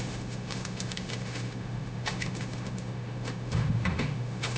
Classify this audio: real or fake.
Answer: fake